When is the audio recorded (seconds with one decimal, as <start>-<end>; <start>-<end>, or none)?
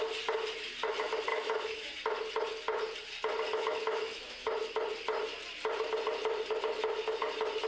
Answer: 0.0-1.3; 2.0-3.5; 4.5-7.7